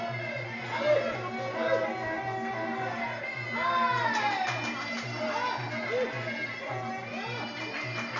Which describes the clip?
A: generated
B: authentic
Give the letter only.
B